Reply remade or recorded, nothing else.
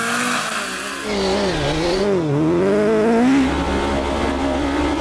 recorded